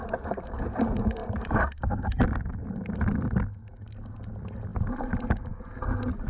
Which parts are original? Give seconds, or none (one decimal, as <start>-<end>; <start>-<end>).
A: 0.0-6.3